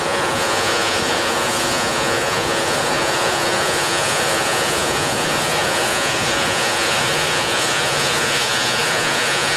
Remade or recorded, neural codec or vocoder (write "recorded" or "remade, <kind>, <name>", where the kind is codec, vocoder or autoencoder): remade, vocoder, Vocos